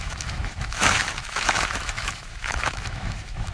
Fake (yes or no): yes